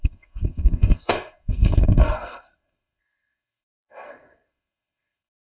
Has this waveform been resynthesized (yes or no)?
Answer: yes